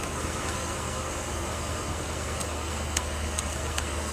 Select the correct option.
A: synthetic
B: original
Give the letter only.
A